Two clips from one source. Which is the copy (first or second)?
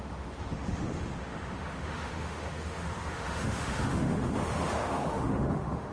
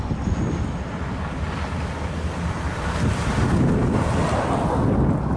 first